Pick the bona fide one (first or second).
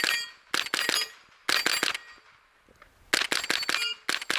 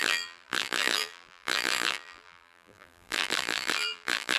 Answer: first